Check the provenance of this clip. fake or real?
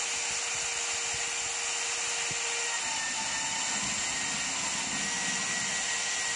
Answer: real